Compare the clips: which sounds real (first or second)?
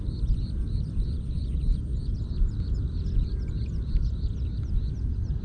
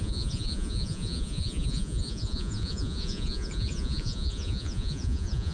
first